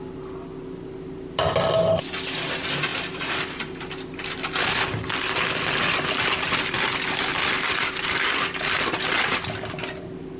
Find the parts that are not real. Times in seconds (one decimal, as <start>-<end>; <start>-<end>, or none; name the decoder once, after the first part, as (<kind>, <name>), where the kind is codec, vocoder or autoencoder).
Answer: none